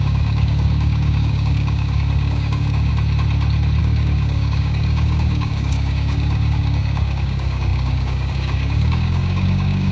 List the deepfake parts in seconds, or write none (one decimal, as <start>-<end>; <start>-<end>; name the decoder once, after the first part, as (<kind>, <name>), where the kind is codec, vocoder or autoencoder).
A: 0.0-2.9 (codec, DAC); 3.8-9.9